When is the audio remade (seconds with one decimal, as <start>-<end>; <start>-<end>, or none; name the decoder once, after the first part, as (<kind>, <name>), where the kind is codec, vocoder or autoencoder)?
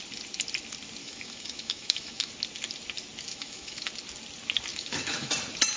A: 1.0-2.3 (autoencoder, DAC-VAE); 3.3-3.9; 4.7-5.3